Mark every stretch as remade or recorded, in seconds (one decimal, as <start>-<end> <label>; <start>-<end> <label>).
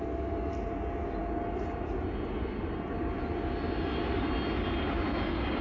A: 0.0-5.6 recorded